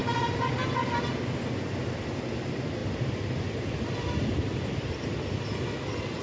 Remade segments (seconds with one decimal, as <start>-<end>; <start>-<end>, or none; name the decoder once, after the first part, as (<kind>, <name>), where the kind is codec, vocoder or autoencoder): none